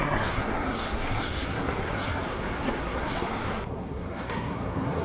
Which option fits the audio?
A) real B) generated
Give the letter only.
B